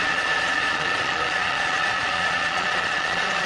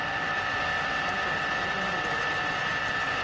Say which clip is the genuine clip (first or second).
second